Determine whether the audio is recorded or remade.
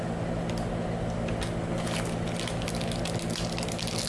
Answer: recorded